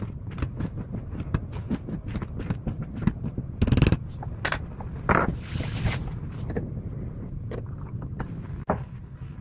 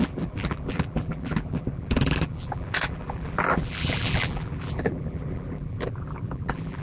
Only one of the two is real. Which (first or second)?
first